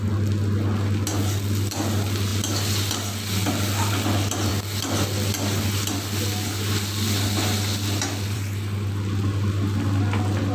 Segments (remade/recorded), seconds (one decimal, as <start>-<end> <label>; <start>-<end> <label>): 0.0-4.5 recorded; 4.5-8.9 remade; 8.9-10.5 recorded